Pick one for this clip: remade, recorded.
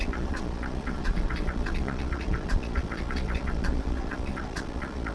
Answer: remade